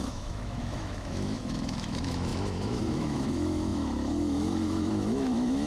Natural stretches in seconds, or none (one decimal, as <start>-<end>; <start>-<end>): none